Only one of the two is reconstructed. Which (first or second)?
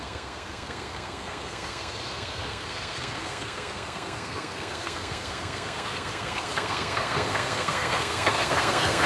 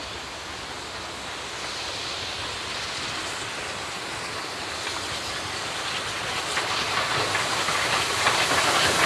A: first